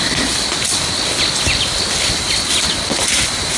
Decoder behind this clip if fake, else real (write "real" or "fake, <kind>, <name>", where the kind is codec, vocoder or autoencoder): real